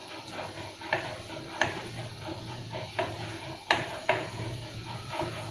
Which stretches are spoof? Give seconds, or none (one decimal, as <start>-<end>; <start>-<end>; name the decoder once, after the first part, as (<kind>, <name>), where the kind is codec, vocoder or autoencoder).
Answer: 2.3-5.5 (vocoder, Vocos)